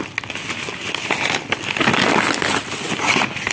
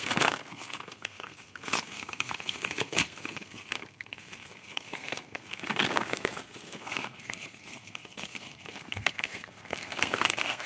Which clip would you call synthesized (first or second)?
second